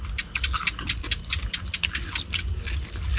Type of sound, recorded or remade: recorded